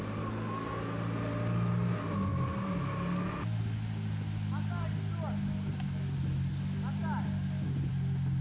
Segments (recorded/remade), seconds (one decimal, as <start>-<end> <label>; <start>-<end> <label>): 0.0-8.4 recorded